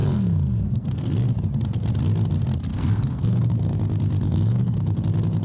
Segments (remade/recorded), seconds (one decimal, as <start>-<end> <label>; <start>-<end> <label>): 0.0-1.3 remade; 1.3-2.7 recorded; 2.7-5.0 remade; 5.0-5.4 recorded